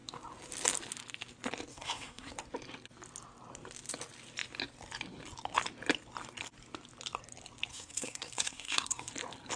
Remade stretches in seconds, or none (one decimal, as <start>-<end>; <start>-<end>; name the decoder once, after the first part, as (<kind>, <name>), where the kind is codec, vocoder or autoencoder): 1.7-2.3 (codec, SNAC); 7.7-9.1